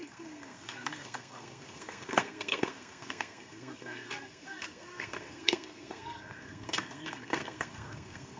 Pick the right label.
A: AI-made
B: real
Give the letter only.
A